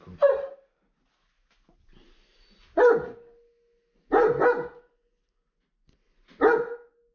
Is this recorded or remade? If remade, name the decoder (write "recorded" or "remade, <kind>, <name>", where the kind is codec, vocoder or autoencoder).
recorded